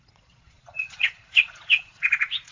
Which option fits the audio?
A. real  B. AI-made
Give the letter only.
B